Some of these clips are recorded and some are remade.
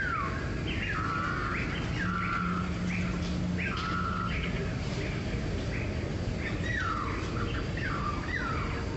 recorded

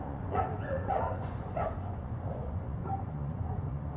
remade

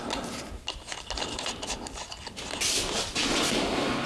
recorded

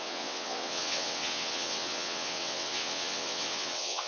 remade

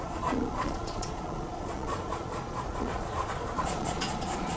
remade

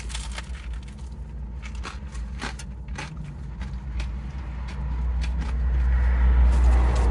recorded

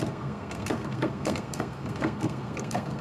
remade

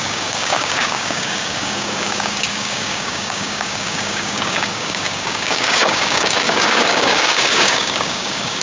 remade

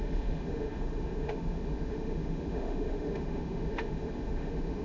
remade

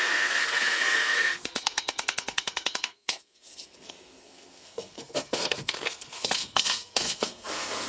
remade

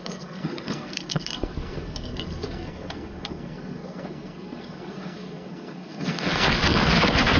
remade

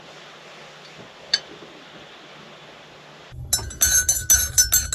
recorded